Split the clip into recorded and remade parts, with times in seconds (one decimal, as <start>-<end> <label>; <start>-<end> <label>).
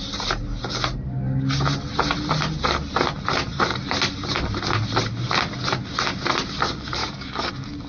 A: 0.0-7.0 recorded; 7.0-7.5 remade; 7.5-7.9 recorded